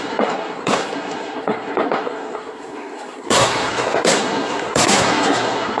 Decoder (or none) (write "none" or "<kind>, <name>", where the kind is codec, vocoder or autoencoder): codec, SNAC